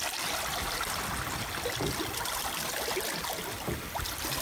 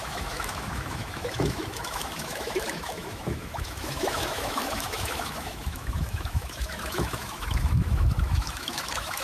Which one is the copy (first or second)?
second